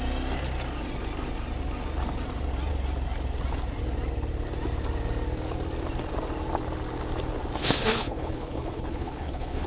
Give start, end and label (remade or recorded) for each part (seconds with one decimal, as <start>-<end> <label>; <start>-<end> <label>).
0.0-7.6 recorded; 7.6-9.7 remade